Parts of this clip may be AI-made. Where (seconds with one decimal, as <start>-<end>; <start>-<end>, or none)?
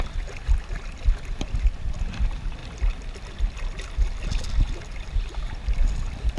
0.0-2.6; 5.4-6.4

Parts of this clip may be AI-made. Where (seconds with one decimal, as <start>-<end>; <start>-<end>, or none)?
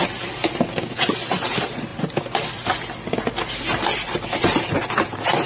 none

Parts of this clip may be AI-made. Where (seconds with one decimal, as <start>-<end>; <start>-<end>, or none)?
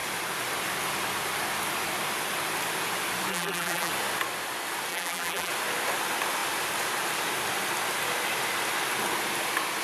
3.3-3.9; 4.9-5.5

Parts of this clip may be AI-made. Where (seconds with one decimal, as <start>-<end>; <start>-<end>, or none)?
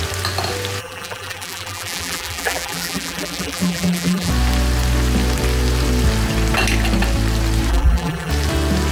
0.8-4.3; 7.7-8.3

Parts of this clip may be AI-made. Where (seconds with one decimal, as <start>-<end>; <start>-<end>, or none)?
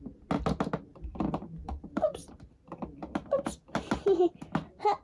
0.9-2.3